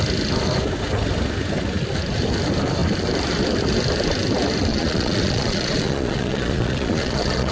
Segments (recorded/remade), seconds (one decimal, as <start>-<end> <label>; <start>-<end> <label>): 0.0-4.7 recorded; 4.7-7.5 remade